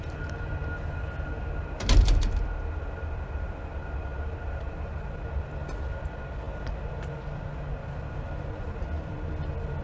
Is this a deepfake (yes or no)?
no